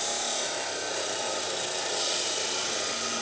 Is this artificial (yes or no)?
no